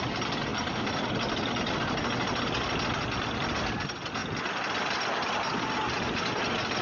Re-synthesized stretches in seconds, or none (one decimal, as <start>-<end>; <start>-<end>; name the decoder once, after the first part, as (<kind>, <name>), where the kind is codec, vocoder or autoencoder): none